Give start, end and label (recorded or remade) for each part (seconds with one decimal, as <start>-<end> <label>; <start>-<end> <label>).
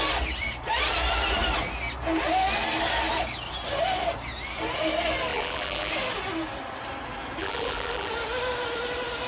0.0-5.3 recorded; 5.3-5.9 remade; 5.9-7.4 recorded; 7.4-8.1 remade; 8.1-9.3 recorded